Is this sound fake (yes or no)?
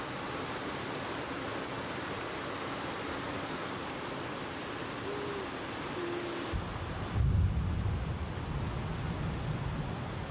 no